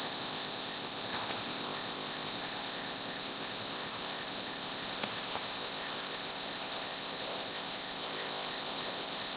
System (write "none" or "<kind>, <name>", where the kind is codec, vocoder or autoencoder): codec, ZipCodec